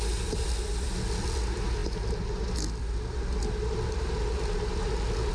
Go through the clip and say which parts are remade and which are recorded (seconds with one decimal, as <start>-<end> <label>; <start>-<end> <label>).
0.0-5.3 recorded